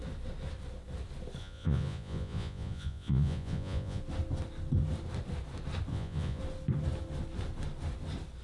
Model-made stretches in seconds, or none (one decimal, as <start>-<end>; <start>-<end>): 1.4-4.0; 5.9-6.4